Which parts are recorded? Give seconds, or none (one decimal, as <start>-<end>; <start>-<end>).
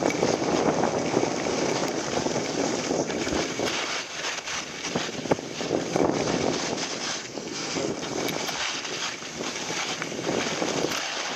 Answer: 0.0-7.2; 7.9-11.4